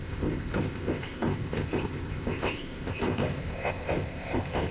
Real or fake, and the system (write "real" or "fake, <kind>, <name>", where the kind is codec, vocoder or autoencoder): fake, codec, ZipCodec